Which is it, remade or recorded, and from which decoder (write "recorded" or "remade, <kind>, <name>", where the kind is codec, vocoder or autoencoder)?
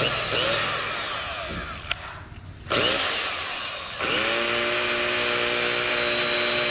recorded